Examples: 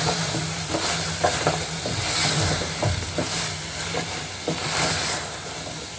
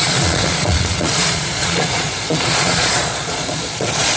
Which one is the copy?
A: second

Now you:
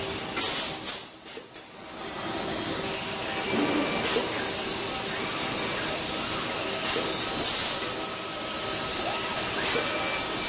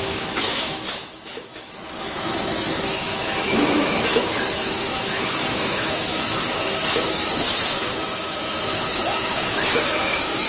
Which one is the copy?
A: second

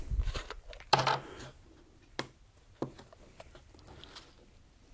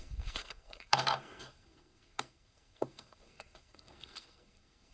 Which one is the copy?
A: second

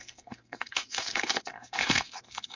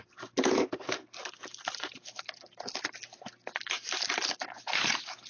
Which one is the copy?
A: first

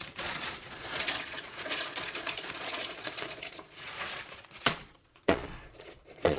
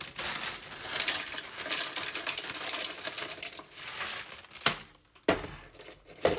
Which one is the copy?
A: first